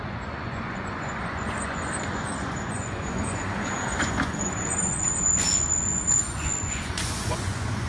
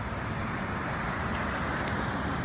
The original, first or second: second